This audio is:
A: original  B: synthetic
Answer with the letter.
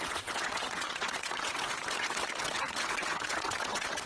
B